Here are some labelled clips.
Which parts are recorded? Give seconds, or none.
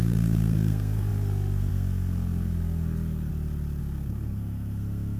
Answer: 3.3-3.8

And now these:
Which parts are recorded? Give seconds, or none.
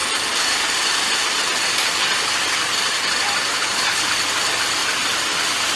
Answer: 0.0-3.5; 4.1-5.8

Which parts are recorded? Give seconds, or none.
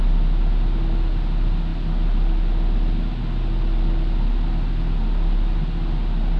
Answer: 0.0-6.4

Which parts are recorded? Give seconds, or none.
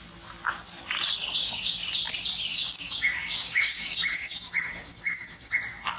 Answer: 0.0-1.2; 1.7-2.5; 5.5-6.0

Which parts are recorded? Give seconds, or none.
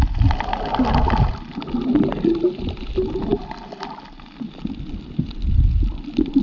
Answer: 0.0-6.4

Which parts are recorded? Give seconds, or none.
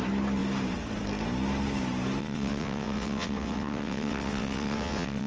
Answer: 0.0-2.2